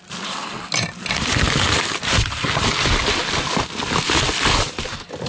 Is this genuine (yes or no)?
yes